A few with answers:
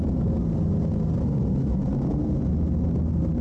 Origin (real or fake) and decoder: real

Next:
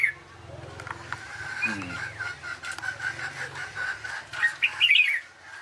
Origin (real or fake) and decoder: real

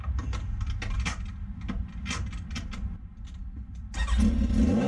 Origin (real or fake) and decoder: real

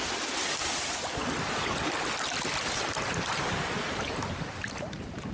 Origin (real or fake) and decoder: real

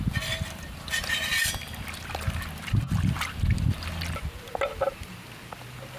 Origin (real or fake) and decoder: real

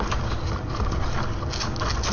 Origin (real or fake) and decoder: real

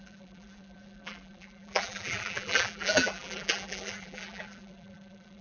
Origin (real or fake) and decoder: fake, vocoder, BigVGAN v2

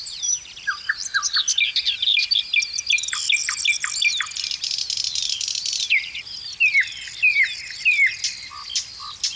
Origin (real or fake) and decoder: real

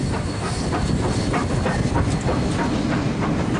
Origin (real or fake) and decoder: real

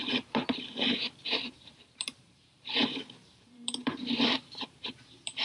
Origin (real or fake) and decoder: fake, vocoder, BigVGAN v2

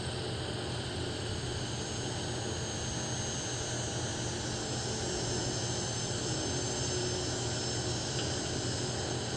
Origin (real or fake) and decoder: real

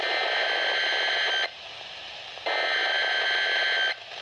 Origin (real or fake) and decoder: real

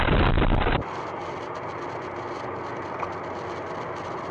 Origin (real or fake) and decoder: real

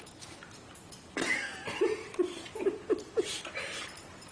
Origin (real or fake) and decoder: fake, vocoder, BigVGAN v2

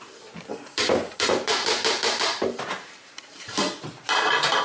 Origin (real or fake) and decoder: fake, vocoder, BigVGAN v2